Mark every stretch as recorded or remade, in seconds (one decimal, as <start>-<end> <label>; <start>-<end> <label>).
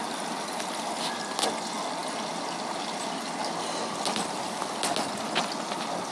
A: 0.0-6.1 recorded